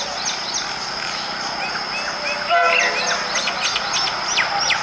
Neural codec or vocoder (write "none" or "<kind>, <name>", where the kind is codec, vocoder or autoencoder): none